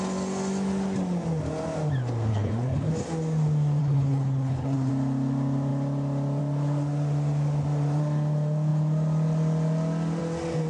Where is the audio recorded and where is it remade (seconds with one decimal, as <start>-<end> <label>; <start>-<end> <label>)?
0.0-2.3 recorded; 2.3-2.9 remade; 2.9-3.8 recorded; 3.8-4.9 remade; 4.9-10.7 recorded